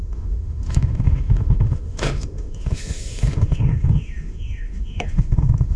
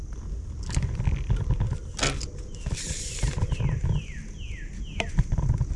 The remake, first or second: first